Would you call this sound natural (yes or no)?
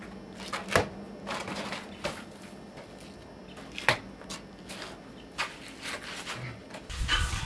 yes